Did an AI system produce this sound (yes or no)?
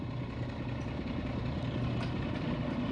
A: no